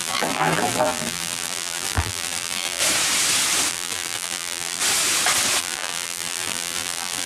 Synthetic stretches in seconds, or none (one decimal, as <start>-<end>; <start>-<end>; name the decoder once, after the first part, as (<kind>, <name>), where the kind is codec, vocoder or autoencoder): 0.0-2.8 (vocoder, BigVGAN v2); 3.7-4.8; 5.6-7.3